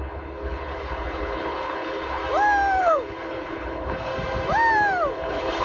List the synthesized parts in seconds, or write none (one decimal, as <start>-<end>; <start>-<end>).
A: 0.0-2.2; 2.8-4.1; 5.1-5.6